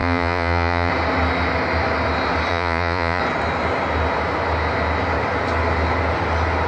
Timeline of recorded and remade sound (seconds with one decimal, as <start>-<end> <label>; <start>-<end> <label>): 0.0-0.9 remade; 0.9-2.5 recorded; 2.5-3.2 remade; 3.2-6.7 recorded